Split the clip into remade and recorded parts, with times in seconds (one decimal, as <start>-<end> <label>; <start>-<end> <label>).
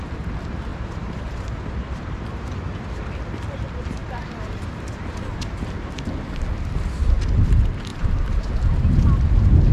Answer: 0.0-0.7 recorded; 0.7-3.0 remade; 3.0-4.0 recorded; 4.0-6.1 remade; 6.1-7.9 recorded; 7.9-8.7 remade; 8.7-9.7 recorded